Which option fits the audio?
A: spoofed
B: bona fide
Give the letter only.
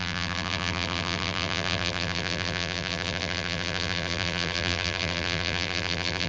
A